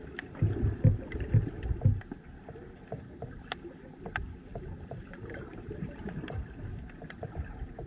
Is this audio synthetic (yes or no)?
no